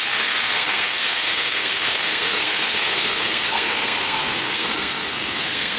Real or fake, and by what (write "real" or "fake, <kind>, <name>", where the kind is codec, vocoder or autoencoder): fake, codec, SNAC